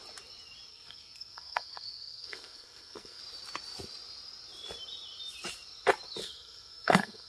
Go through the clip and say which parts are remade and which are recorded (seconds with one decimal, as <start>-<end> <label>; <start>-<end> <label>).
0.0-0.7 recorded; 0.7-3.2 remade; 3.2-6.2 recorded; 6.2-7.3 remade